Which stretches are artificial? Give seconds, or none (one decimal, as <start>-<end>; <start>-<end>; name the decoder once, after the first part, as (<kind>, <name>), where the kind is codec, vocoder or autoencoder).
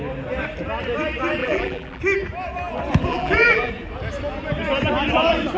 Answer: 1.4-2.0 (vocoder, BigVGAN v2); 3.1-3.7